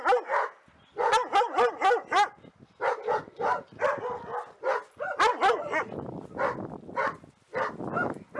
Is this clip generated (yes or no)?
no